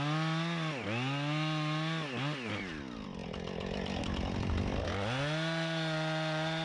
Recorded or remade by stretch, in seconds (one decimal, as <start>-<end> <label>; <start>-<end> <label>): 0.0-6.6 recorded